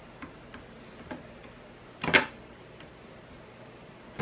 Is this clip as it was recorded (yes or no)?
yes